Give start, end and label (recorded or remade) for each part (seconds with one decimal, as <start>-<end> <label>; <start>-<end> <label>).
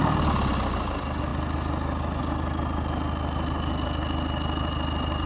0.0-5.3 recorded